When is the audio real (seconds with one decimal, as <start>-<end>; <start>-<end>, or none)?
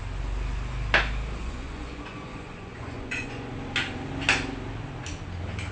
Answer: 0.0-1.4; 3.5-5.7